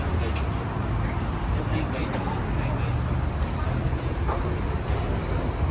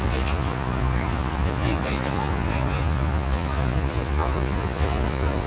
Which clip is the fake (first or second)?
second